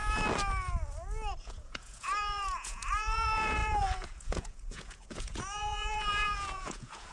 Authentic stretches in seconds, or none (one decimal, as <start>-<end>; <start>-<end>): 0.0-1.4